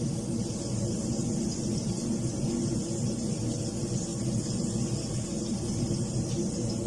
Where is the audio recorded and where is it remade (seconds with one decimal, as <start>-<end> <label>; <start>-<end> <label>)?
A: 0.0-6.9 recorded